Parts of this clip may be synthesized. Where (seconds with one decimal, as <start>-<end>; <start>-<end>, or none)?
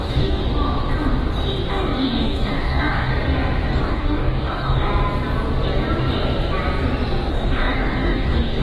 0.0-0.4; 1.7-3.1; 3.8-4.9; 7.3-8.6